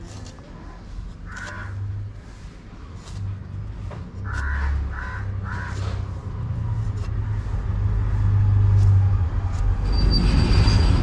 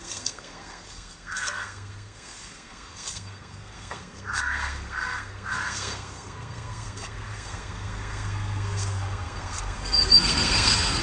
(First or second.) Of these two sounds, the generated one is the second